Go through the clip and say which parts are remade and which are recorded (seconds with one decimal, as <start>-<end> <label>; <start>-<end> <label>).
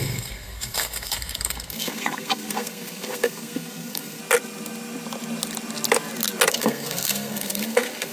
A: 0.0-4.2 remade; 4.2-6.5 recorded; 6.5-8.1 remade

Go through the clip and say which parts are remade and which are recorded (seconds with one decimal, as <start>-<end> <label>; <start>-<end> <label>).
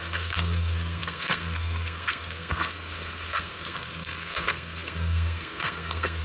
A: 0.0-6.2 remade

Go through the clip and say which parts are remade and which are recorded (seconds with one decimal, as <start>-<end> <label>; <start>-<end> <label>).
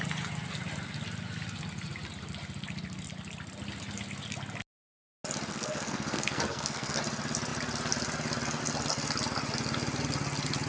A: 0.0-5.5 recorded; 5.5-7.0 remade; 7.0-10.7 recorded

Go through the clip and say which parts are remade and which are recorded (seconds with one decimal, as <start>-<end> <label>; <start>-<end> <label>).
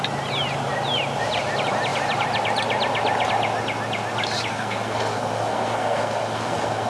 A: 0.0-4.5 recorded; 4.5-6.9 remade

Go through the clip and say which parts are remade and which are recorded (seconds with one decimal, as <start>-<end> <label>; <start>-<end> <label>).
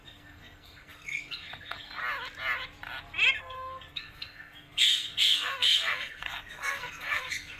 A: 0.0-2.0 remade; 2.0-3.4 recorded; 3.4-7.6 remade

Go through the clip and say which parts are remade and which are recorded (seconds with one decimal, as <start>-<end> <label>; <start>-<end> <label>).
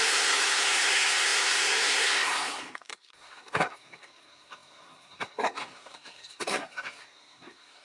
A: 0.0-7.8 remade